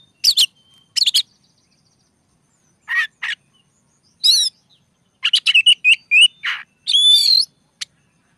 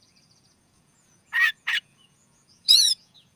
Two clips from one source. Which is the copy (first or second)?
second